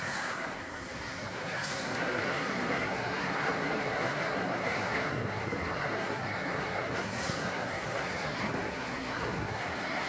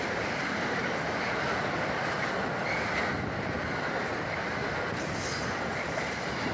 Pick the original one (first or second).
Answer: second